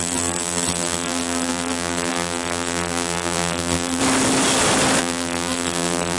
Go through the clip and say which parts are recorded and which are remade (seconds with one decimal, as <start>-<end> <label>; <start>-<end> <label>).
0.0-4.0 remade; 4.0-5.0 recorded; 5.0-6.2 remade